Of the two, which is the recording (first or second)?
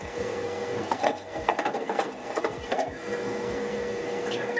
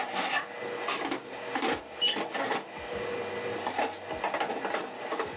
second